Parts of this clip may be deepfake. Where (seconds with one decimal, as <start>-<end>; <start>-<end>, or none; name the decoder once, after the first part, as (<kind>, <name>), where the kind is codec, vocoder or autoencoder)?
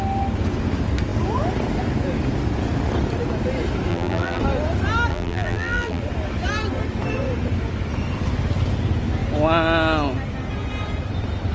3.9-4.4 (vocoder, BigVGAN v2); 5.1-6.0